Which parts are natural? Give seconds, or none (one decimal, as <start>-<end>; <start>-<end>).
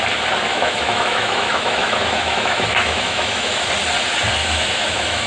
0.0-0.5; 3.7-4.4